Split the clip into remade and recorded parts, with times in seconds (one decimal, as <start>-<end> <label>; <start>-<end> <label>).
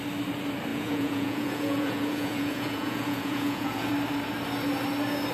0.0-0.7 recorded; 0.7-3.9 remade; 3.9-5.3 recorded